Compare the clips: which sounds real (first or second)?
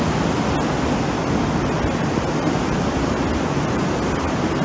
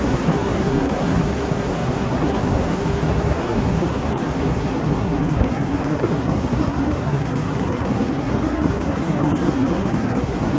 first